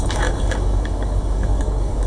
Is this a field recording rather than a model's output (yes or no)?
no